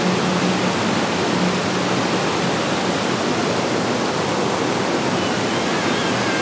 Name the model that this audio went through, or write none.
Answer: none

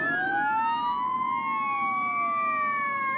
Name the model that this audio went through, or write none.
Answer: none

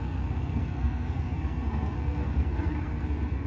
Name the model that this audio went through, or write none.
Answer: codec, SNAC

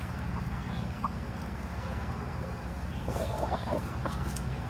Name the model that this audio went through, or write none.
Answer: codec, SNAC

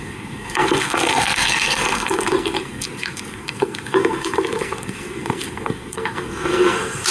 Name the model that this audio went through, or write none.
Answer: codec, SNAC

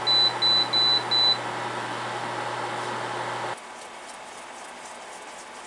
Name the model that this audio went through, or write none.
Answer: none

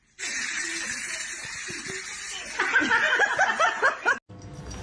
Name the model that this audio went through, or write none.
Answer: none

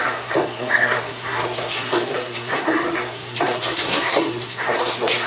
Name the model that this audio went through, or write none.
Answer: codec, SNAC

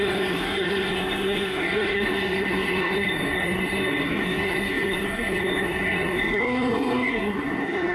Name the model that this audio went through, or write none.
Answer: codec, SNAC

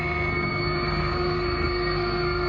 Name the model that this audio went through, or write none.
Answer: codec, SNAC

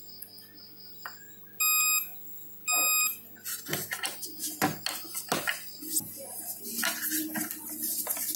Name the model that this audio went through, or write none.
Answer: none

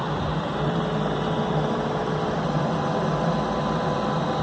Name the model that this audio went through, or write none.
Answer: none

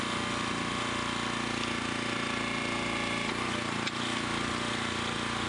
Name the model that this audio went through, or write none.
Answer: none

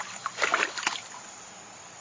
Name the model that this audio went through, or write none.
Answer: none